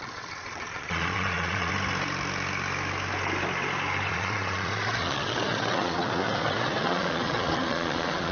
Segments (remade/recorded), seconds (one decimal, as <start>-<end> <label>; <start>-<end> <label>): 0.0-1.7 remade; 1.7-4.1 recorded; 4.1-8.3 remade